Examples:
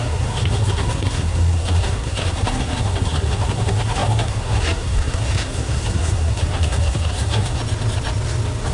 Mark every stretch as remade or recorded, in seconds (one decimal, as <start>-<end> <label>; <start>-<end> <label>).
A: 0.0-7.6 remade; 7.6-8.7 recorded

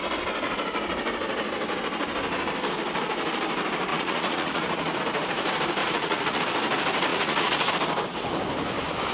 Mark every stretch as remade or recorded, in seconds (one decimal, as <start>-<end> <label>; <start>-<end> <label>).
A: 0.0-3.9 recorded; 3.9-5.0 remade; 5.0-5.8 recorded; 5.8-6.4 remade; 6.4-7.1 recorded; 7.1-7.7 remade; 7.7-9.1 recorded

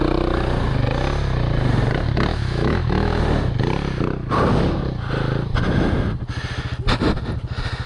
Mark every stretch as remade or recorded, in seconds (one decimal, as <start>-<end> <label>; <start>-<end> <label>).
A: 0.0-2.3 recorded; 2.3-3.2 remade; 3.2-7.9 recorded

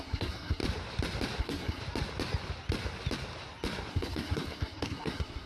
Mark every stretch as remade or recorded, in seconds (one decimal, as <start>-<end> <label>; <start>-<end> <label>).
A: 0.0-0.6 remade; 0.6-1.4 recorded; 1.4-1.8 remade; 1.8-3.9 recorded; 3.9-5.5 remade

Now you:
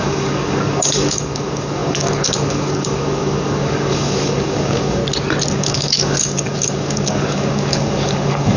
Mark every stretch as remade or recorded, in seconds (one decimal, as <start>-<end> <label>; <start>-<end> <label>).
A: 0.0-5.0 remade; 5.0-5.5 recorded; 5.5-8.6 remade

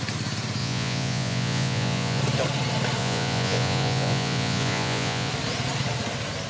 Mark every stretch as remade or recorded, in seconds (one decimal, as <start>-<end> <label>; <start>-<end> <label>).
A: 0.0-0.6 recorded; 0.6-2.2 remade; 2.2-3.0 recorded; 3.0-5.3 remade; 5.3-6.5 recorded

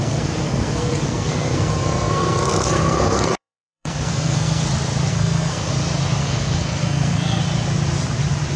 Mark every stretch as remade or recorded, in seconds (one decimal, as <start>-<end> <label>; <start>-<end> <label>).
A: 0.0-4.6 remade; 4.6-5.1 recorded; 5.1-5.7 remade; 5.7-6.2 recorded; 6.2-7.4 remade; 7.4-8.6 recorded